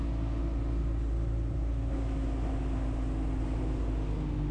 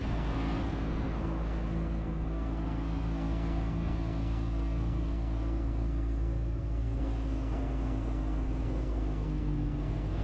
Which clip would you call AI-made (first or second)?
second